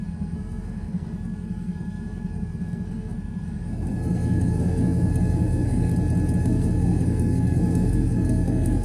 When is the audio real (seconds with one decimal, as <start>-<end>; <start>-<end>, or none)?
5.9-6.4